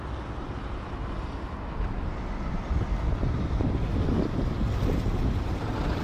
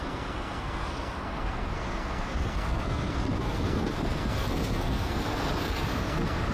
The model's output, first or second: second